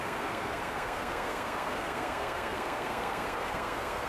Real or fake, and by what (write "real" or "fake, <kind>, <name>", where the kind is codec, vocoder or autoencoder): fake, codec, SNAC